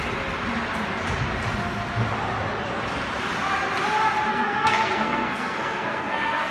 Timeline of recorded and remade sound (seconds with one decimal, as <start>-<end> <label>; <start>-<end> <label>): 0.0-4.3 recorded; 4.3-6.5 remade